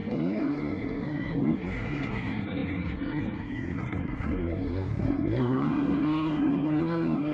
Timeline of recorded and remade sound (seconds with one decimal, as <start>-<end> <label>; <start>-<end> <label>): 0.0-7.3 remade